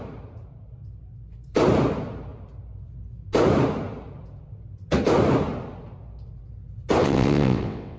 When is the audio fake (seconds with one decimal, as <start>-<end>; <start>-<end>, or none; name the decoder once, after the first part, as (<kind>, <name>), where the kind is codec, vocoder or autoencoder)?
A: 7.0-8.0 (vocoder, WaveNeXt)